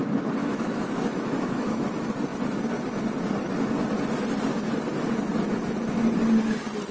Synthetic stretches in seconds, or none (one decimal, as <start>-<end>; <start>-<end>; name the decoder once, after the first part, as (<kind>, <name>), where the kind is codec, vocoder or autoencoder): 0.4-1.9 (autoencoder, DAC-VAE)